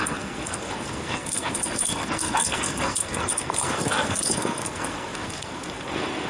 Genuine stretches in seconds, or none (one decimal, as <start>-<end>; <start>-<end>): none